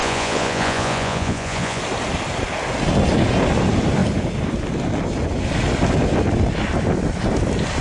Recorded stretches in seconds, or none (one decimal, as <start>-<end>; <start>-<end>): 1.8-7.8